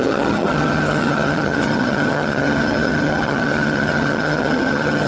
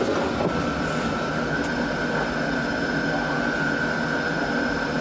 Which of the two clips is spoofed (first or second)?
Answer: first